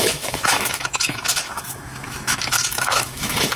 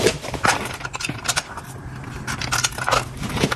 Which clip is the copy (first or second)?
first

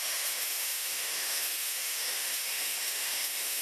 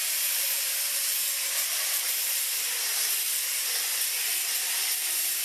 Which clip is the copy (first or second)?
first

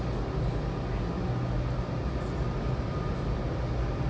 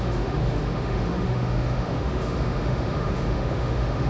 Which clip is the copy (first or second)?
second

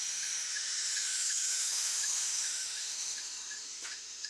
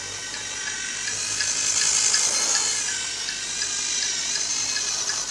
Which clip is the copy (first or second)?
first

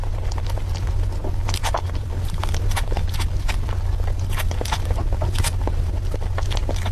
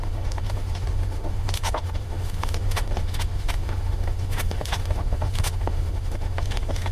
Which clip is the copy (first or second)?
second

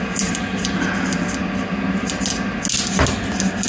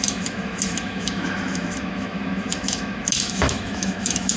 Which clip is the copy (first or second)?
second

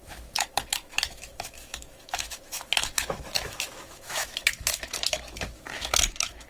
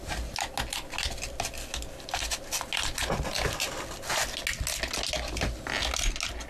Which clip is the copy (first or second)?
first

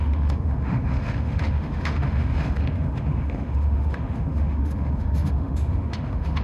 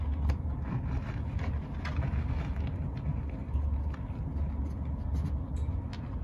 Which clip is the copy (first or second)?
first